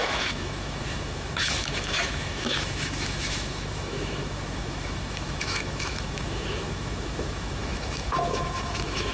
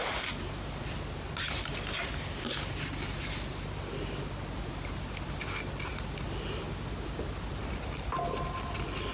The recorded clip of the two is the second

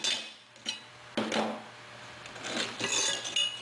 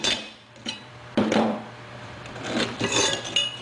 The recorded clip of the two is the first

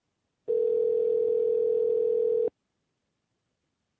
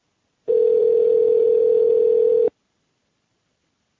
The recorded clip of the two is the first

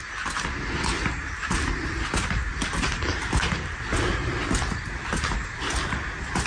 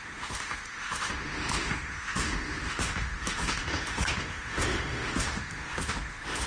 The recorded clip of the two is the first